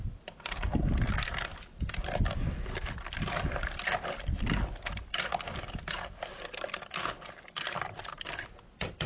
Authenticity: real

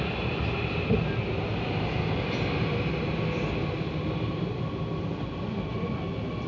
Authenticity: real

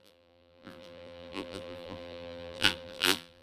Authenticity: fake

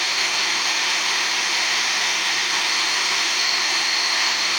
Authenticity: fake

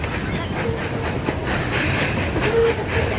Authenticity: real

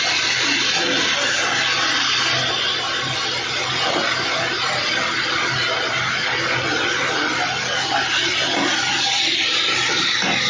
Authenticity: real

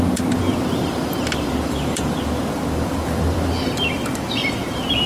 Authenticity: fake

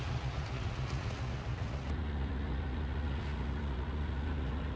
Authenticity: fake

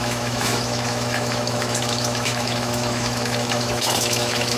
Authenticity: fake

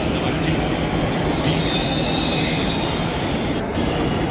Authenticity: fake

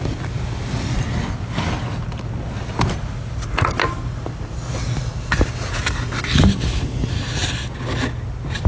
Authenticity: real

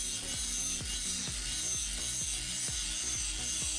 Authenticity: real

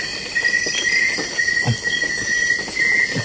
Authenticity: real